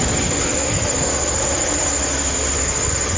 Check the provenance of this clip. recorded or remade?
recorded